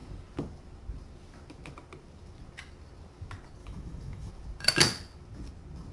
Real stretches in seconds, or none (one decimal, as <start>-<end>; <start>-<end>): 0.0-3.6; 4.3-5.9